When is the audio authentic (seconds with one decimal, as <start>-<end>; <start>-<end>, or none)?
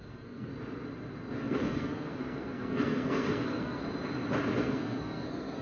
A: 0.5-1.4; 3.8-4.6